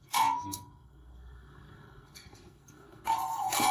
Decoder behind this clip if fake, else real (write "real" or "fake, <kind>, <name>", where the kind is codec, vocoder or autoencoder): fake, codec, SNAC